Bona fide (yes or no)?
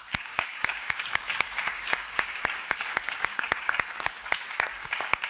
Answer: no